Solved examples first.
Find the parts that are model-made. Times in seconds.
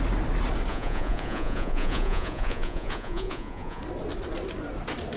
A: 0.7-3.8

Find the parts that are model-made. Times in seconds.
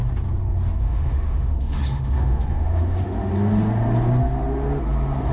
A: 0.8-3.3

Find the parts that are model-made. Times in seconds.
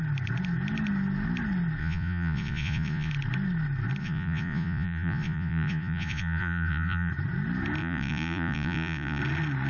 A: 1.8-3.1; 4.0-7.1; 7.8-9.2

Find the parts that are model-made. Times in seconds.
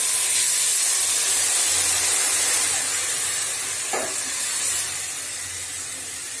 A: none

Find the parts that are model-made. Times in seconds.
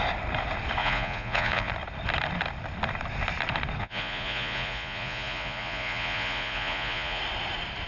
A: 0.8-1.7; 3.8-7.2